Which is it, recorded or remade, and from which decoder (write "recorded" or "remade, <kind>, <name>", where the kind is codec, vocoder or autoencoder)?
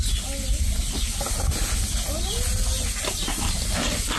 recorded